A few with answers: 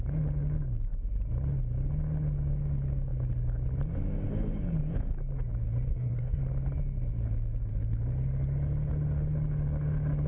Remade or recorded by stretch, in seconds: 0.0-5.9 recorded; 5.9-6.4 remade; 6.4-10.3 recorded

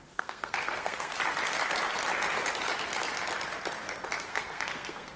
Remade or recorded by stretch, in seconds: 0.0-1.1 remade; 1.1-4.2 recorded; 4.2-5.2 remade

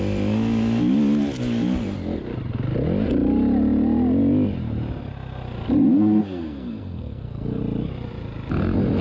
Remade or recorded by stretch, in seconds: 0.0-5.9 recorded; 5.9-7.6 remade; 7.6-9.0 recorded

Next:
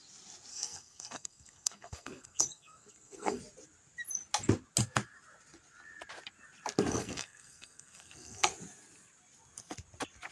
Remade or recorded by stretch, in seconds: 0.0-0.5 recorded; 0.5-3.4 remade; 3.4-6.9 recorded; 6.9-8.5 remade; 8.5-10.3 recorded

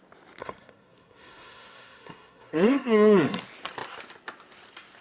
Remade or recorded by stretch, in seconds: 0.0-0.4 recorded; 0.4-3.4 remade; 3.4-5.0 recorded

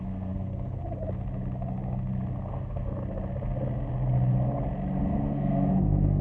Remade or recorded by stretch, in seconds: 0.0-0.8 remade; 0.8-2.5 recorded; 2.5-2.9 remade; 2.9-5.0 recorded; 5.0-6.2 remade

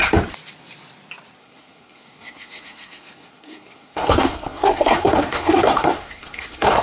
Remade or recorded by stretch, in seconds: 0.0-1.4 recorded; 1.4-6.8 remade